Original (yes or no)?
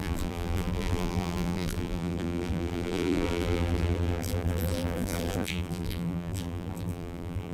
no